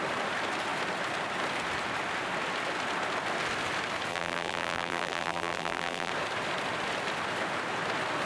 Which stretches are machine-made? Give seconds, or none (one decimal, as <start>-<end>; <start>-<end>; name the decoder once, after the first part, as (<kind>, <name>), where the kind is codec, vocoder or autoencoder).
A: 4.1-6.1 (vocoder, BigVGAN v2)